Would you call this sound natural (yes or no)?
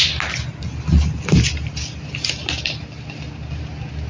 yes